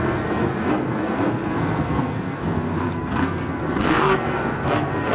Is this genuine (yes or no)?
no